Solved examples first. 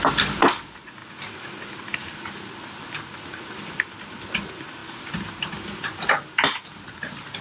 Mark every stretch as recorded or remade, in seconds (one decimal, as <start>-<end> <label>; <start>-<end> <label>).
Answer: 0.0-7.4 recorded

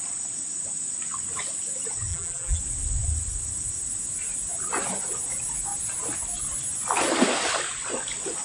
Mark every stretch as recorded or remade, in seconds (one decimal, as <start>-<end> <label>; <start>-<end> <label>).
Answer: 0.0-2.1 recorded; 2.1-2.6 remade; 2.6-8.4 recorded

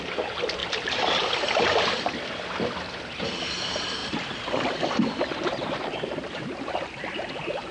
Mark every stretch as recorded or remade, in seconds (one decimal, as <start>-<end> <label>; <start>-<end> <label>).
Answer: 0.0-0.6 recorded; 0.6-3.0 remade; 3.0-4.0 recorded; 4.0-6.7 remade; 6.7-7.7 recorded

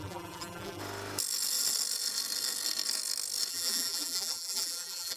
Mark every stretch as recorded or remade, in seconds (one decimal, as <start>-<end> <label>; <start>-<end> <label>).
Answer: 0.0-0.8 remade; 0.8-3.5 recorded; 3.5-5.2 remade